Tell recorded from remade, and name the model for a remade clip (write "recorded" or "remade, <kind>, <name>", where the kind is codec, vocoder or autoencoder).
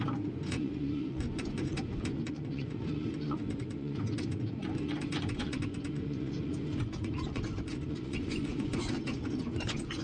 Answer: remade, vocoder, Vocos